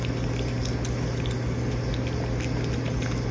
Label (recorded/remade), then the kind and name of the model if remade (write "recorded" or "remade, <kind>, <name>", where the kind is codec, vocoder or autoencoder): recorded